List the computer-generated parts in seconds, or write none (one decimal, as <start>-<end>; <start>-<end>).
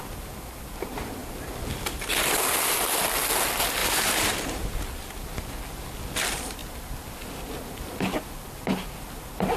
3.8-4.8